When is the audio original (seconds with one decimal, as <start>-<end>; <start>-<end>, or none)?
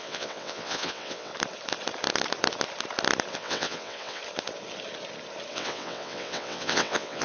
1.3-3.3; 4.2-5.5